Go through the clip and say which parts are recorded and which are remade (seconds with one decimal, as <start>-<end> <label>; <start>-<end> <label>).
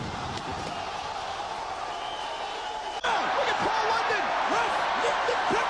0.0-5.7 recorded